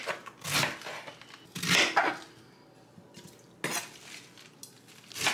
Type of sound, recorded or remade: recorded